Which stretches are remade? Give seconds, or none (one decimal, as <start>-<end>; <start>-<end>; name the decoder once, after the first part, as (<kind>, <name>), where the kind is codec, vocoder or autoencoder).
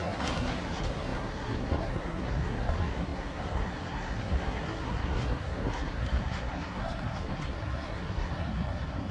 0.0-9.1 (codec, SNAC)